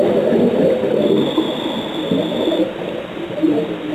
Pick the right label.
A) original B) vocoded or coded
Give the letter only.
A